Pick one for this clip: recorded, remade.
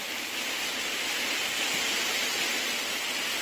recorded